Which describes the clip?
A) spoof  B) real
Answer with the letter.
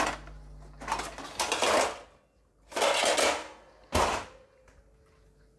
B